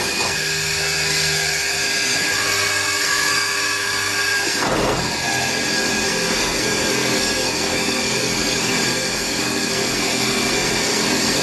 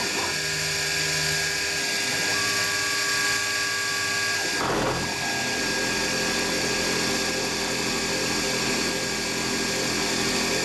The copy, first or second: first